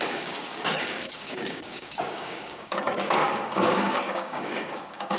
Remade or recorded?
remade